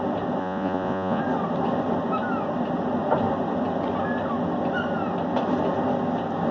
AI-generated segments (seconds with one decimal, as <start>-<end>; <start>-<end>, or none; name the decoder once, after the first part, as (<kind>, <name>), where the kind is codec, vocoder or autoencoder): 0.4-1.2 (vocoder, Vocos)